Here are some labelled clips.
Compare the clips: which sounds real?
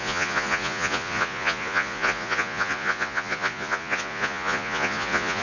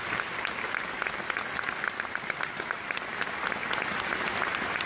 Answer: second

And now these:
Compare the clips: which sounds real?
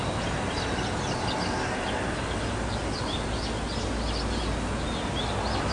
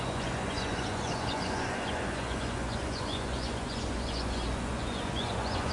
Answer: first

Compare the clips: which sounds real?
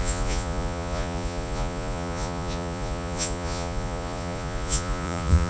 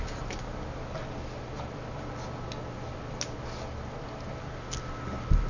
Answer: second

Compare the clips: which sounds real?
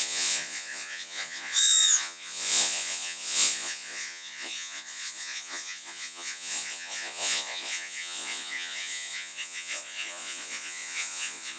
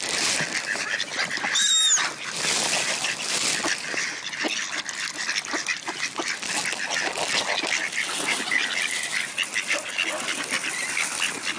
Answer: second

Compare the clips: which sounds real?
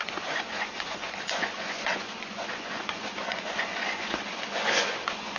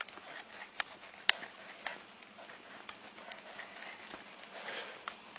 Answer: second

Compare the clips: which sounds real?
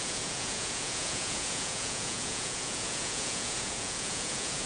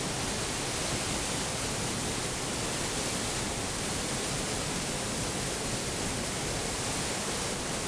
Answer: second